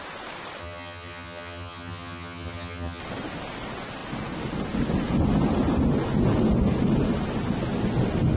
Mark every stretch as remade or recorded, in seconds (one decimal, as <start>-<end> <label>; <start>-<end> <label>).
0.0-0.6 recorded; 0.6-3.0 remade; 3.0-8.4 recorded